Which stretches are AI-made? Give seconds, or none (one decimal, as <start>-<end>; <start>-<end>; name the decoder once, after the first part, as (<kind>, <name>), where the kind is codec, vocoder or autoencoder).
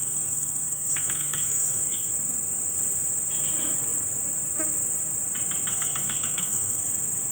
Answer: 0.0-2.1 (codec, SNAC); 5.7-6.8